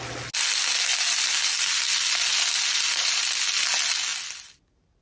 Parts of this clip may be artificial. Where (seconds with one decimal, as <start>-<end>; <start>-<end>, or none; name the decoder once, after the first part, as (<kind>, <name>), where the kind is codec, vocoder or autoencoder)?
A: none